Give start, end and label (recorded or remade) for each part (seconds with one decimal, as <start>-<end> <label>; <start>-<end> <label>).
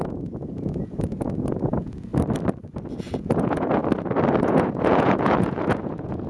0.0-2.1 remade; 2.1-3.0 recorded; 3.0-3.8 remade; 3.8-4.4 recorded; 4.4-6.3 remade